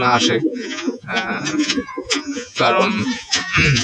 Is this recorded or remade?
remade